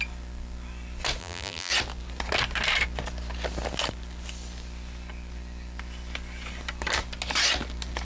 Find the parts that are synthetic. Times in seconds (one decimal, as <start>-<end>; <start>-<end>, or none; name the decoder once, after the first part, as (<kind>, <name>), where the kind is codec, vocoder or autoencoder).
1.2-1.7 (vocoder, BigVGAN v2)